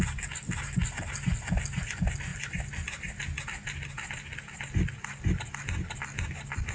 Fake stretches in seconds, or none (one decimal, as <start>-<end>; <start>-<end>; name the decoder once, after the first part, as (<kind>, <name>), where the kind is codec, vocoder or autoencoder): none